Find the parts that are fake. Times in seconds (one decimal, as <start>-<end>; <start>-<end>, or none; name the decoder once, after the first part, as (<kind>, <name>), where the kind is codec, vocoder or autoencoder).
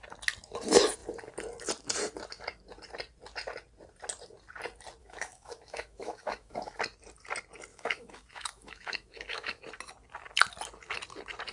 5.0-6.8 (autoencoder, DAC-VAE); 7.7-9.6